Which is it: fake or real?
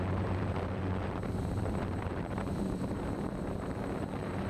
fake